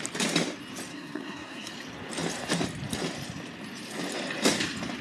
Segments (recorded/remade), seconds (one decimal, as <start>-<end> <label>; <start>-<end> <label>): 0.0-0.9 recorded; 0.9-1.7 remade; 1.7-5.0 recorded